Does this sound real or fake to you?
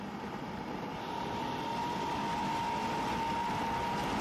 real